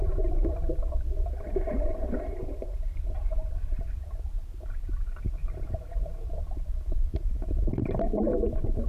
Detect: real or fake fake